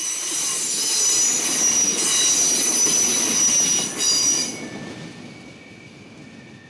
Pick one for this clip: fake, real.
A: real